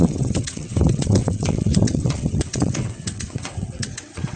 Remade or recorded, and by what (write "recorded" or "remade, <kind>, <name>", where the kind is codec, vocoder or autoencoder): remade, vocoder, WaveNeXt